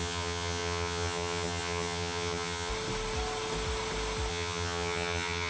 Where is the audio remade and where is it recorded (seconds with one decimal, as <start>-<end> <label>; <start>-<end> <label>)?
0.0-2.7 remade; 2.7-4.3 recorded; 4.3-5.5 remade